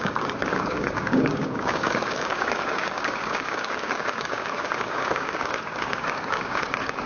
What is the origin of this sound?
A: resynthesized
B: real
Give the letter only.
A